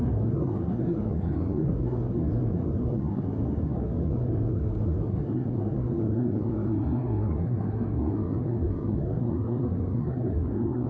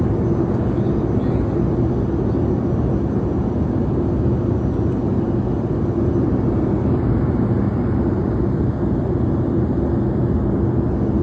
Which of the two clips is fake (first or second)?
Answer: first